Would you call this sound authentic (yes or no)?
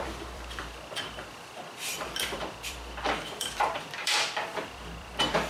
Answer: no